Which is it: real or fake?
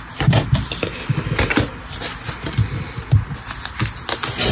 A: real